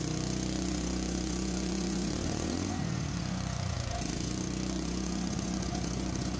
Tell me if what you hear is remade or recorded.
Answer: remade